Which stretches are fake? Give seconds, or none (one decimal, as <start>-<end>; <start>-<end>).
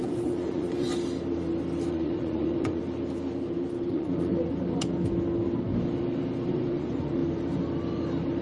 0.0-0.9; 1.9-2.8; 3.9-4.3; 6.5-7.2